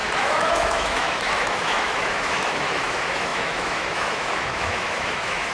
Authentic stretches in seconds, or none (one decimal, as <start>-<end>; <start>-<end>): none

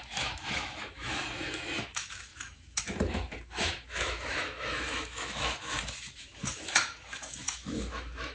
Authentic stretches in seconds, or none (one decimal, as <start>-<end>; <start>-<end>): none

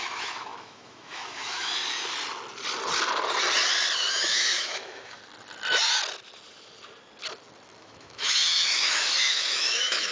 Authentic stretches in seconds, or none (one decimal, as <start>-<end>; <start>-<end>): 1.8-4.1; 5.2-7.8

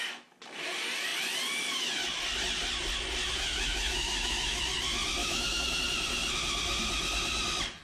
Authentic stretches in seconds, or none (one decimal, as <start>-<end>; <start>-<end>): 0.0-3.2; 4.6-5.2; 5.8-7.8

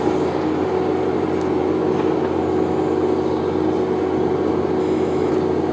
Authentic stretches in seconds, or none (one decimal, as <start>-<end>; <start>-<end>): 0.0-4.8; 5.3-5.7

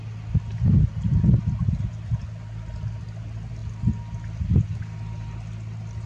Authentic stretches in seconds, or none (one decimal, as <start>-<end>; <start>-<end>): 0.0-6.1

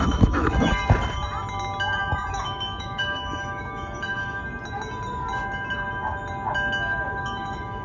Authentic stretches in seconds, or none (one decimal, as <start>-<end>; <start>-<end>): 0.8-2.3; 4.4-7.2

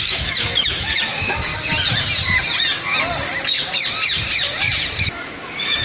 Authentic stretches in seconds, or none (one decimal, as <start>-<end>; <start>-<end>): 1.5-5.0